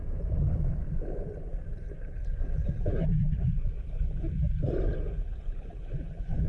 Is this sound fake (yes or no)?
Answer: yes